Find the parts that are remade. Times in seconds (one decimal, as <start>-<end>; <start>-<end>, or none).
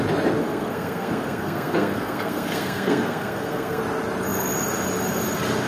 0.4-3.8